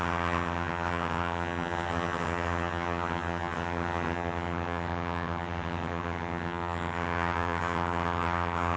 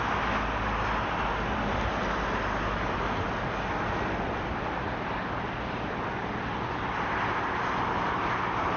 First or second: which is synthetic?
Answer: first